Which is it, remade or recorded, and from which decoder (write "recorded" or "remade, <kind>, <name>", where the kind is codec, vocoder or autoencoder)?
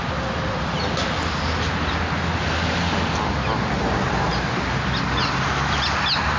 recorded